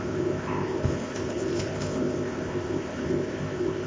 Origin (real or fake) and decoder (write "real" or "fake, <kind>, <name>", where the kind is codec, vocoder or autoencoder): fake, codec, ZipCodec